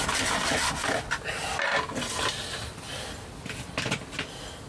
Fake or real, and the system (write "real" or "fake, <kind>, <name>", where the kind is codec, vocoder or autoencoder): real